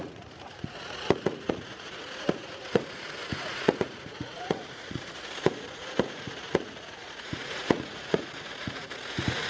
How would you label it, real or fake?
fake